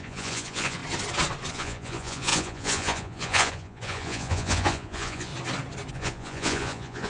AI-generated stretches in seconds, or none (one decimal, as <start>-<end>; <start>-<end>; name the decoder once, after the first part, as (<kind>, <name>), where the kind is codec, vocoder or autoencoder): 0.0-0.8 (vocoder, Vocos); 1.5-5.3; 5.9-7.1